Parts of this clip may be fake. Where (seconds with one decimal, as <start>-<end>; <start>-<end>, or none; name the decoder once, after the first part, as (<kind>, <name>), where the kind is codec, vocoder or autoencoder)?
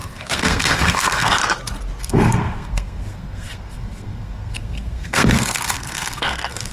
0.0-1.4 (codec, SNAC); 2.0-6.7